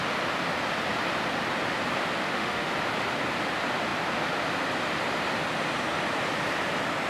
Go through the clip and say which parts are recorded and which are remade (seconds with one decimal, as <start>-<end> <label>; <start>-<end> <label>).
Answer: 0.0-2.2 recorded; 2.2-2.7 remade; 2.7-7.1 recorded